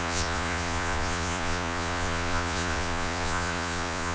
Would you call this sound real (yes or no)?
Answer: no